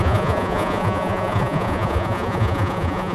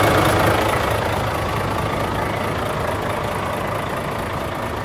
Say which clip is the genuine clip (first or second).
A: second